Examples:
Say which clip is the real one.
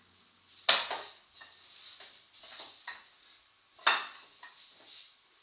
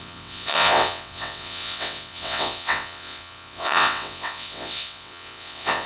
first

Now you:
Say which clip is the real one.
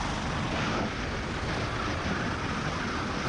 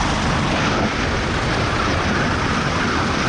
first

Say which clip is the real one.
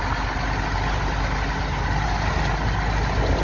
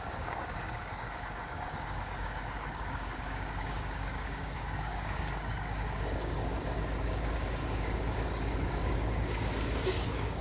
first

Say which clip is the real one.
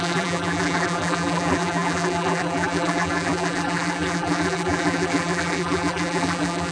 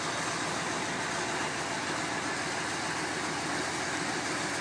second